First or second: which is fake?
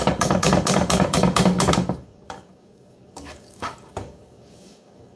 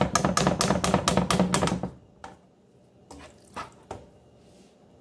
first